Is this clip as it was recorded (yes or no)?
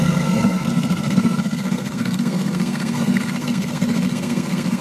no